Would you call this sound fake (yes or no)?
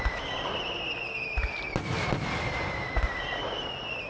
no